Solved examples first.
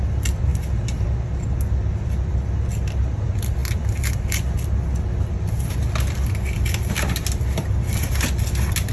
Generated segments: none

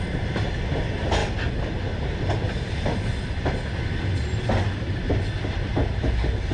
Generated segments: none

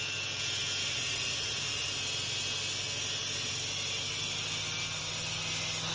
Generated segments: 0.8-1.9 (vocoder, Vocos)